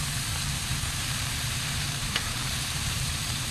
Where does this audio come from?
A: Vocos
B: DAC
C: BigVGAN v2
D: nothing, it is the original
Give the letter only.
C